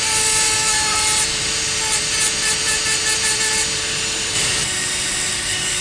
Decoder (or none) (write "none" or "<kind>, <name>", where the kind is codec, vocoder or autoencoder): vocoder, BigVGAN v2